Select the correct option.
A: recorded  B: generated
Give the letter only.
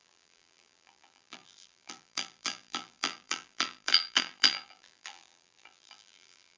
B